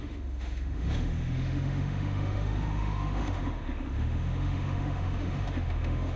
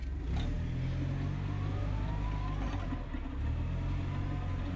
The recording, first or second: second